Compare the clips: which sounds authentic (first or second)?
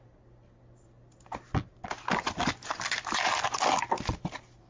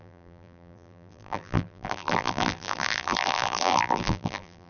first